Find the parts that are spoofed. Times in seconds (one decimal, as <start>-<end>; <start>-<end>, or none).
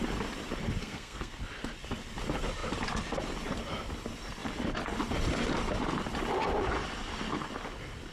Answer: 0.8-1.4